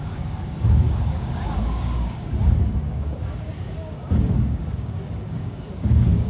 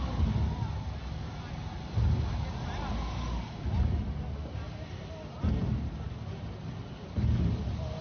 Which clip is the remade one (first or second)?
first